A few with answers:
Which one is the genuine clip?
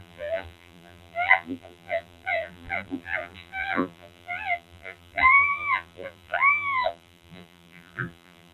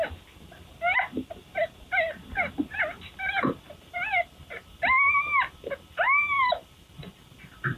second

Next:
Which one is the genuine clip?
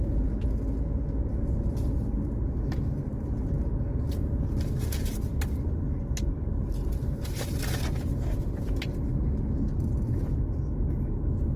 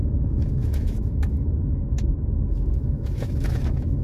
first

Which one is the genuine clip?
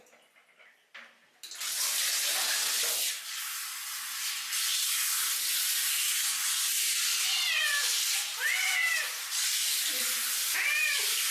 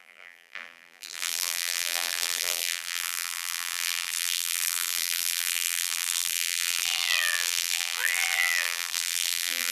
first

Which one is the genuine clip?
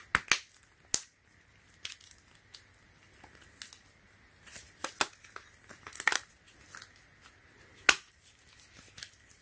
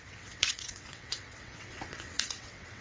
first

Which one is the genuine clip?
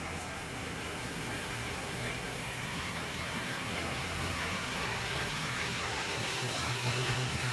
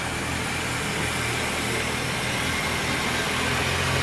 second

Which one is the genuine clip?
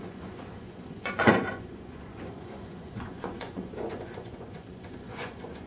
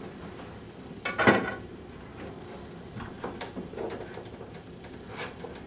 second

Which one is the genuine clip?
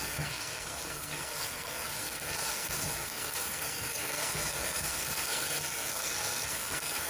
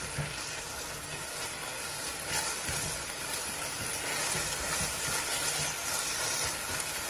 second